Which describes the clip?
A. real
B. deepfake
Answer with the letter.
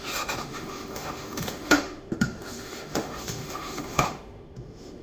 B